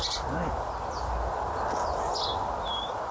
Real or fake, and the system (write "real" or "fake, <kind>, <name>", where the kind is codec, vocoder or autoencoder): real